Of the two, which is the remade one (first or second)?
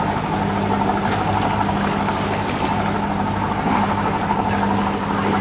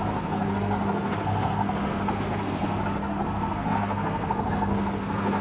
second